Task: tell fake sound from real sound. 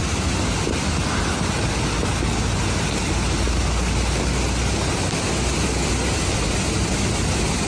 real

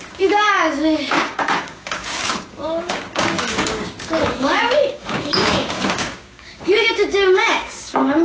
fake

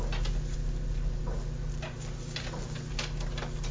real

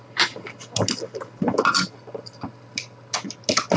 real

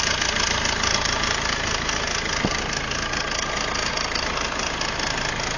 real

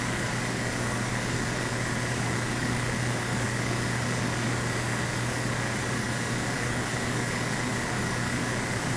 fake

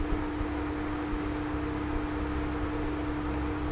real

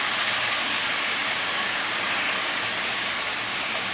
fake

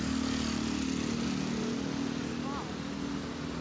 real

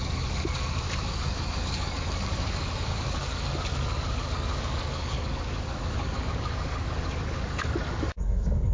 fake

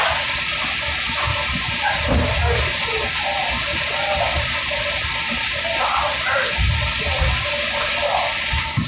real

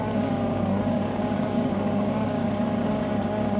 fake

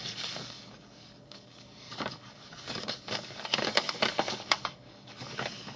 fake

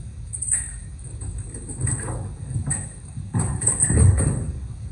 fake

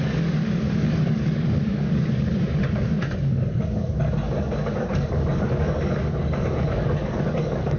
fake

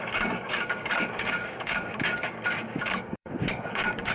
fake